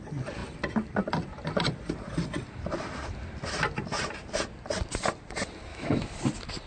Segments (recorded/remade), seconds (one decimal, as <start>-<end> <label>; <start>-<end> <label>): 0.0-5.7 recorded; 5.7-6.2 remade; 6.2-6.7 recorded